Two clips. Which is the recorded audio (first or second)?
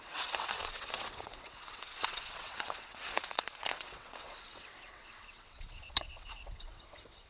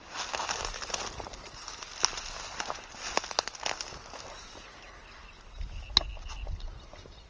second